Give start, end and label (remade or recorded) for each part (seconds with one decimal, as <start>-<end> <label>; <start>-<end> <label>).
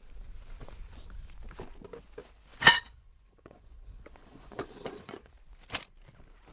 0.0-2.5 recorded; 2.5-5.3 remade; 5.3-6.5 recorded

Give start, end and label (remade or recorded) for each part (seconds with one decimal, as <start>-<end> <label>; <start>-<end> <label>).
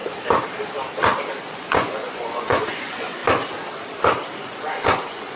0.0-1.4 recorded; 1.4-3.2 remade; 3.2-4.4 recorded; 4.4-5.4 remade